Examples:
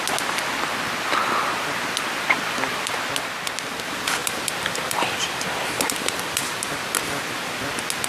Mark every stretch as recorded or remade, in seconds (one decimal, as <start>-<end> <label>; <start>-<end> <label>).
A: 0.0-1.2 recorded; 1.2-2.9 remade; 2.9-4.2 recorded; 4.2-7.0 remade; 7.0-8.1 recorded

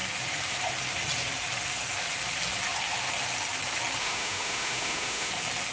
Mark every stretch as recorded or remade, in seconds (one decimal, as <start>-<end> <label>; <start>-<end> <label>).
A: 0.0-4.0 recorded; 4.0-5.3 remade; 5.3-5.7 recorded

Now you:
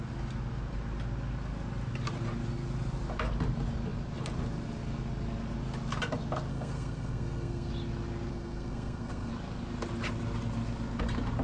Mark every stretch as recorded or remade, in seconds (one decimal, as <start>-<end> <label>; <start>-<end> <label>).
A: 0.0-6.5 recorded; 6.5-7.7 remade; 7.7-8.3 recorded; 8.3-9.3 remade; 9.3-11.4 recorded

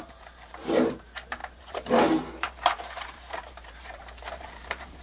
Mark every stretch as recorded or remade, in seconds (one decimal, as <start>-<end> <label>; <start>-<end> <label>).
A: 0.0-5.0 remade

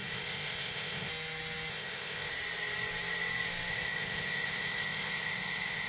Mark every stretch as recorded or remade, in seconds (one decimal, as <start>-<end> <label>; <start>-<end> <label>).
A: 0.0-1.1 remade; 1.1-1.7 recorded; 1.7-2.3 remade; 2.3-3.7 recorded; 3.7-5.9 remade

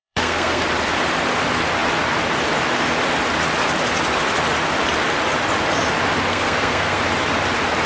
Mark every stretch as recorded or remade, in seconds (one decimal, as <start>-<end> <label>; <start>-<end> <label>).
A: 0.0-0.6 remade; 0.6-6.3 recorded; 6.3-7.0 remade; 7.0-7.9 recorded

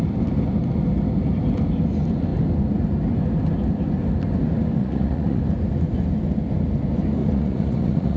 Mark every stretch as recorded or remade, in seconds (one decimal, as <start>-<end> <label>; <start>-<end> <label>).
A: 0.0-4.8 recorded; 4.8-5.4 remade; 5.4-7.2 recorded; 7.2-8.2 remade

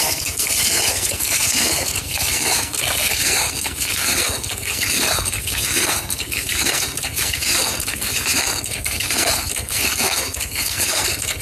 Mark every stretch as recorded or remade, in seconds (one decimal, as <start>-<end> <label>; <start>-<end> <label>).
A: 0.0-11.4 remade